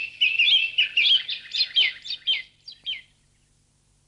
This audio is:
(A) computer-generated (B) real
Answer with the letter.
B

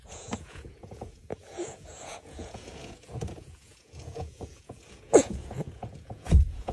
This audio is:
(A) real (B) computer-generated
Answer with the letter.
B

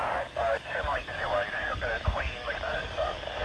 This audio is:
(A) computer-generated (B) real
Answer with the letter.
A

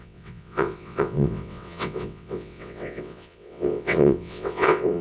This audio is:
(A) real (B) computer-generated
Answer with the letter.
B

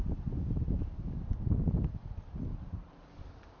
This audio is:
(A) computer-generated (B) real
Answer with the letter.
B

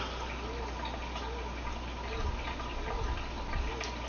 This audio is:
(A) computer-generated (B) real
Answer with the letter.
B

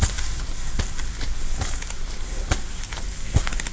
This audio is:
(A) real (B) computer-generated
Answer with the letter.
A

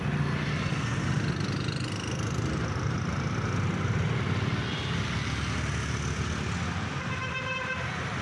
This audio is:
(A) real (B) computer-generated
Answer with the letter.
A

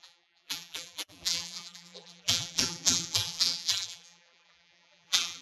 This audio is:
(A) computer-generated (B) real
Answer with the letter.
A